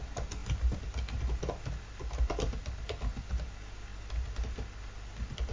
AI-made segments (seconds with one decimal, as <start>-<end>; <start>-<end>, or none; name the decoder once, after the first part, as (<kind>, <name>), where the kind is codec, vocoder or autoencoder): none